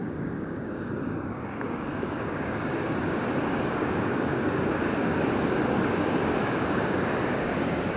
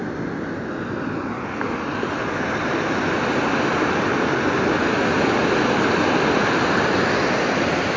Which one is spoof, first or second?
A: first